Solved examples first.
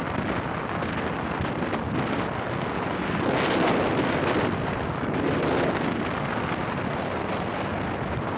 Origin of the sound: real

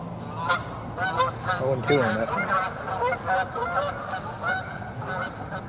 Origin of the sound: real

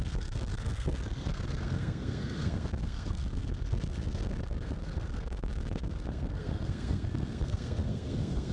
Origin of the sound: fake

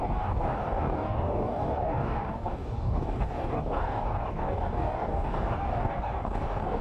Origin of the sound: fake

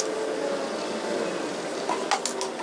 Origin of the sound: real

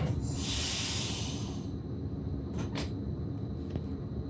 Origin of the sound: fake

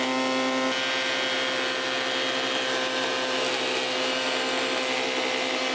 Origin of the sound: real